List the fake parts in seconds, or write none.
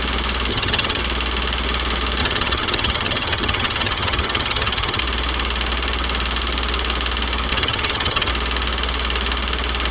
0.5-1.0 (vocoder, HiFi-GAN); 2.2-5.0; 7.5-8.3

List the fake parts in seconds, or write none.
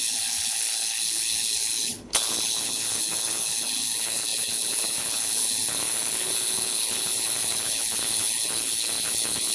0.0-9.5 (codec, HILCodec)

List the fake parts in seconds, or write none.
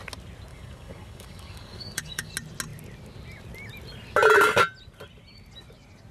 0.5-2.3 (codec, DAC)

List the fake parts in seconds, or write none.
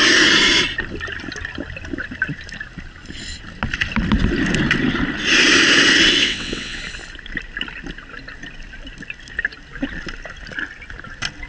6.2-6.8 (vocoder, WaveNeXt)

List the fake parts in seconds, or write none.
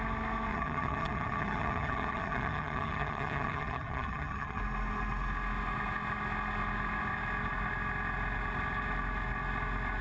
0.5-4.6 (vocoder, HiFi-GAN)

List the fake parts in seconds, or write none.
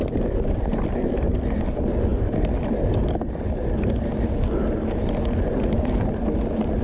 none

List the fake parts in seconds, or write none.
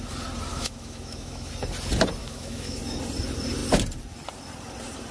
0.5-1.5 (autoencoder, DAC-VAE); 2.2-2.8